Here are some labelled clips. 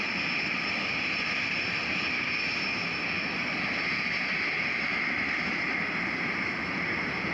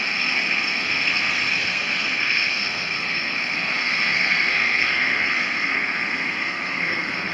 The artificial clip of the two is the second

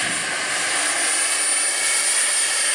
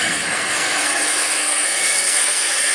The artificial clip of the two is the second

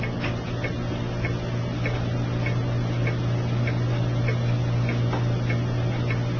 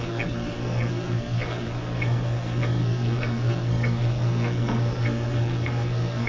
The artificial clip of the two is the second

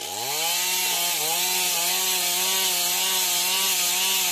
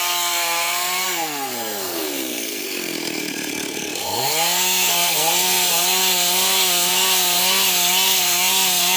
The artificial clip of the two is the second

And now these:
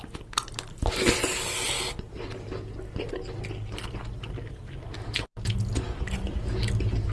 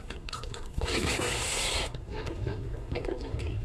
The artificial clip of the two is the second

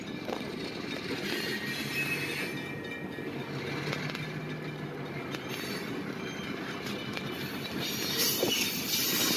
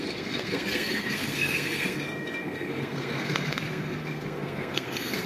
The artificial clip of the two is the second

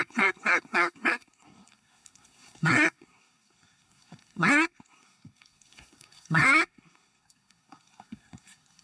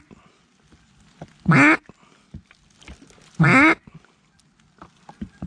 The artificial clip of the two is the first